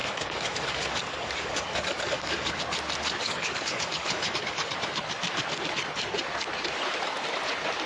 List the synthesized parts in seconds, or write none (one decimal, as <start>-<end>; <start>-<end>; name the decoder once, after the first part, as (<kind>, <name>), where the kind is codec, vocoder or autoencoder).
0.0-2.5 (codec, DAC); 3.2-4.7